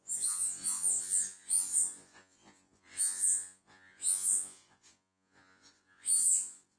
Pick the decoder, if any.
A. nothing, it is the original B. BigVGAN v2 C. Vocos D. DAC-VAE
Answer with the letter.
C